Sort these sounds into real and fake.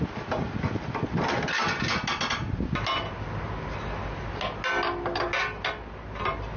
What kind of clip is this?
real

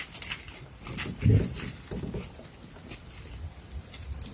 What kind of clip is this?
real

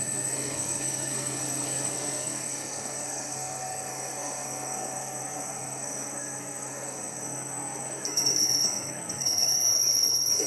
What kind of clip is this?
fake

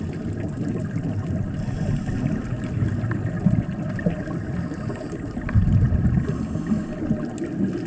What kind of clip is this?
real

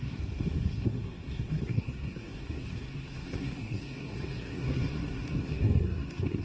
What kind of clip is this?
fake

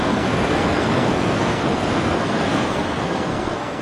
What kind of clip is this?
fake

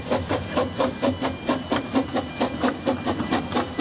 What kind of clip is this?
real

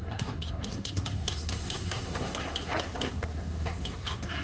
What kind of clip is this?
fake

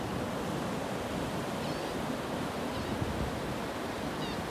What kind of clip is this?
real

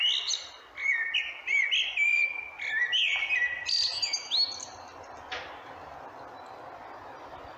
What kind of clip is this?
real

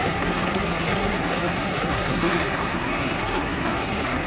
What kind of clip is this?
fake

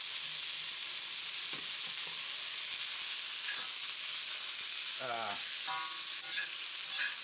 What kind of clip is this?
real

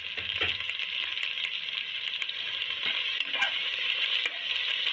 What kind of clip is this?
real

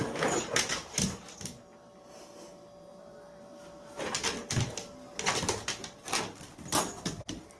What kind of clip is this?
real